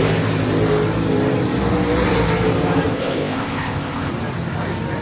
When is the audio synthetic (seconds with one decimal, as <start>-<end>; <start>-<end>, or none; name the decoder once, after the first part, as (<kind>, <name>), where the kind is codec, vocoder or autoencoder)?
2.9-4.1 (codec, ZipCodec)